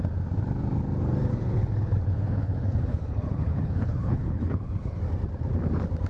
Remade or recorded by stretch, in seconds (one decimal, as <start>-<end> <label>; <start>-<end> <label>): 0.0-1.3 recorded; 1.3-5.0 remade; 5.0-6.1 recorded